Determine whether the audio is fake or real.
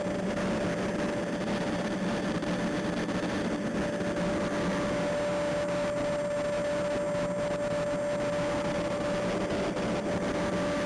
real